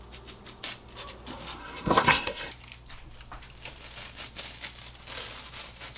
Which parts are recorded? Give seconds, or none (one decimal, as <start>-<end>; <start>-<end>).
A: 0.0-1.6; 2.5-6.0